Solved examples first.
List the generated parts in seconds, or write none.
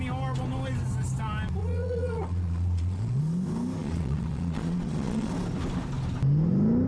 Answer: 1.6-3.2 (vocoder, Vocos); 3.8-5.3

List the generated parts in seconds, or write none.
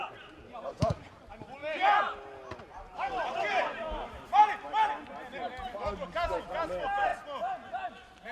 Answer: 0.7-1.2 (vocoder, Vocos)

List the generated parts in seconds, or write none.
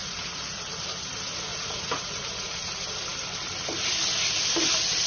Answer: 0.0-0.8 (vocoder, Vocos); 1.5-2.7